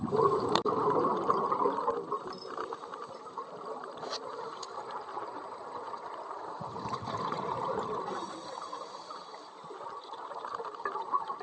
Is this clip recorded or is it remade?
remade